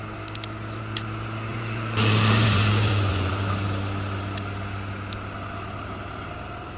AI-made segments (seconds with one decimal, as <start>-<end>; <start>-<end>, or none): 1.5-3.3